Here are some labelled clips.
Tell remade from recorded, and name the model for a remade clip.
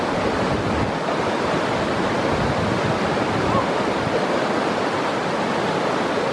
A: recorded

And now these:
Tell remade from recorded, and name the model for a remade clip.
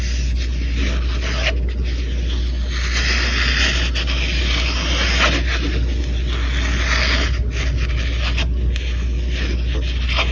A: recorded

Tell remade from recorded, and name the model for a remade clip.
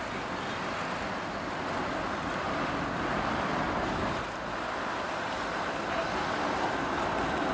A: remade, vocoder, BigVGAN v2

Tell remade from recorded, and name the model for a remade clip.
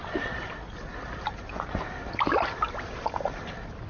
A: recorded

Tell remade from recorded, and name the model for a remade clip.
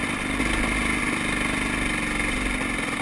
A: recorded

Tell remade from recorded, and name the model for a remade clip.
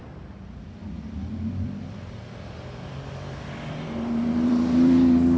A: remade, vocoder, BigVGAN v2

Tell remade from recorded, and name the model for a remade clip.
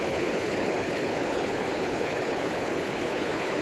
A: remade, codec, HILCodec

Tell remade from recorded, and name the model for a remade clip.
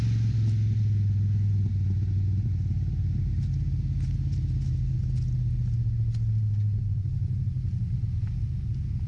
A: recorded